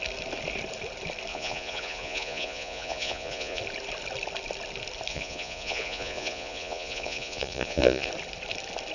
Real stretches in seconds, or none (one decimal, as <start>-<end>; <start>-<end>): 0.0-1.3; 3.6-5.1; 8.1-8.9

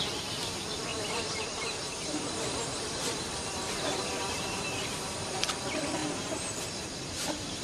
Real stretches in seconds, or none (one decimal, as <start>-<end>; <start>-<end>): 0.0-0.9; 5.5-6.0

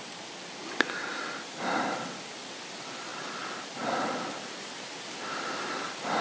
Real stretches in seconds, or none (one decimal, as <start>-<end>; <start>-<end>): 0.0-6.2

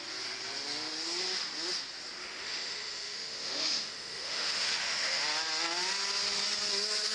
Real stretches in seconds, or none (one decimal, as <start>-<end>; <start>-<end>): 0.0-2.2; 5.2-7.1

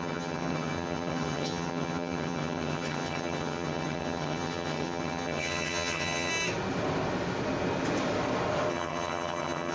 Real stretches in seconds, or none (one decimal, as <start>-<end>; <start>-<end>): 6.3-8.7

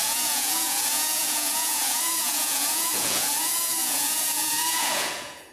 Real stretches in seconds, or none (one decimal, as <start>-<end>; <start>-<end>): none